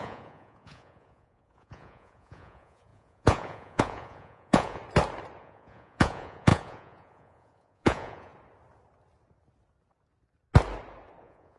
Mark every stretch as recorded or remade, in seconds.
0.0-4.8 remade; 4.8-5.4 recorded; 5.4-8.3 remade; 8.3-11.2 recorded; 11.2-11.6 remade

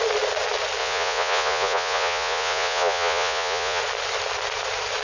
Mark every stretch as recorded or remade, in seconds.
0.0-0.8 recorded; 0.8-3.8 remade; 3.8-5.0 recorded